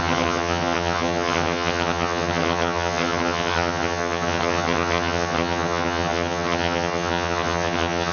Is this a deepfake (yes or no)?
yes